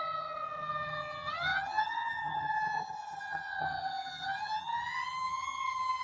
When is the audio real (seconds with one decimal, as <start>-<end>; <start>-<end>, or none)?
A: none

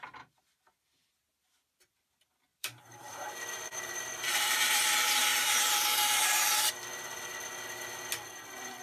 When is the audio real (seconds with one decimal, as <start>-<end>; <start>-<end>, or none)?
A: 0.0-2.5; 4.8-5.3; 6.7-8.8

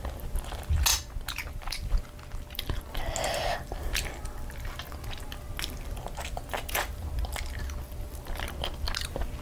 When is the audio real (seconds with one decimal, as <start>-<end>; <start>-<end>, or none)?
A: 0.0-9.4

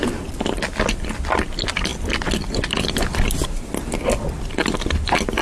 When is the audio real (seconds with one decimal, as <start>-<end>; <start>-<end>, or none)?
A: 0.0-5.4